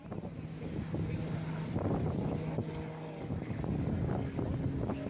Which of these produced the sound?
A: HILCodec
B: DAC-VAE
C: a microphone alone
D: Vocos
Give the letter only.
C